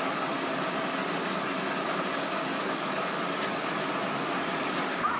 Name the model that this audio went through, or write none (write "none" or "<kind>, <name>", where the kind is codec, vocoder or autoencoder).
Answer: none